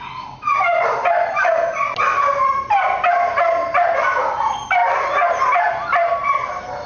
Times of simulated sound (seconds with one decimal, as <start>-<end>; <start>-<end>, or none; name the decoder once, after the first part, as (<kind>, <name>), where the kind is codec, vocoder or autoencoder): none